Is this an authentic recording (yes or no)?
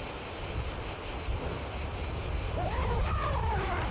yes